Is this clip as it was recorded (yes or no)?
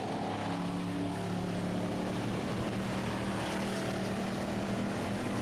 yes